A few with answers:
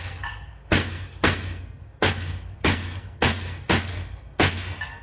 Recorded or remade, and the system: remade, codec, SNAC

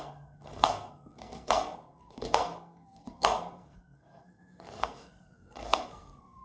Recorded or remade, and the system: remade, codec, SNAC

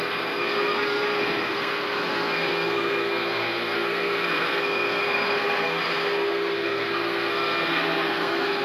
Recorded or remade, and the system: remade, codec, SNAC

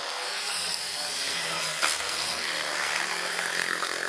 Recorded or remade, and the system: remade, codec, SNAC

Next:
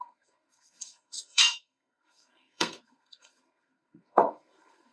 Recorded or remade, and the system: remade, codec, SNAC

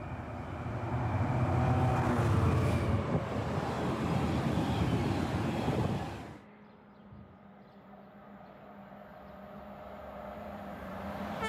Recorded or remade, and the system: recorded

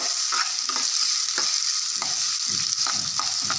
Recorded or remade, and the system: recorded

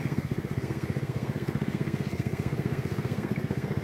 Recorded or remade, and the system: remade, codec, SNAC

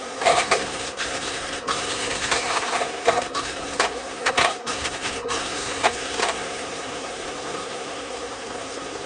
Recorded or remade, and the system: remade, codec, SNAC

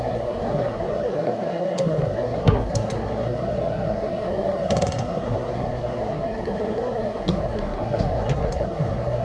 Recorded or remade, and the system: remade, codec, SNAC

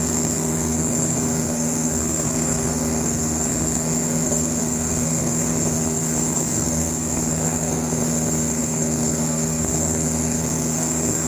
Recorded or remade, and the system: remade, codec, SNAC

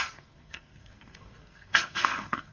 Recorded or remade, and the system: remade, codec, SNAC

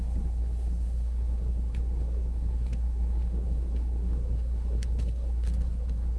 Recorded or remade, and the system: remade, codec, SNAC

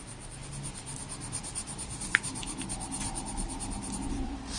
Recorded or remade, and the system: recorded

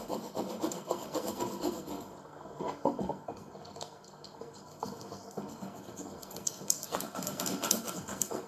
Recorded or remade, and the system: remade, codec, SNAC